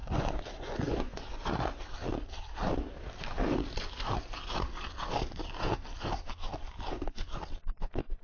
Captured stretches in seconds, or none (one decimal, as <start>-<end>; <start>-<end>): 1.8-8.2